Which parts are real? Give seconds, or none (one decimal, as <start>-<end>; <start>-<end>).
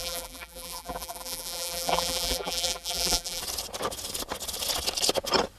3.4-5.6